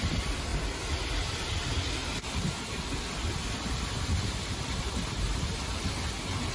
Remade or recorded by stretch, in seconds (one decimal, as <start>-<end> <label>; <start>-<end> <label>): 0.0-0.5 recorded; 0.5-1.5 remade; 1.5-2.0 recorded; 2.0-5.9 remade; 5.9-6.5 recorded